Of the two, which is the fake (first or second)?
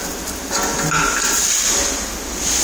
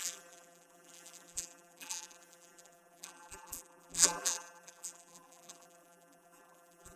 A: second